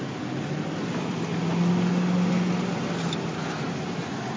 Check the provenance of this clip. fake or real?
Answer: real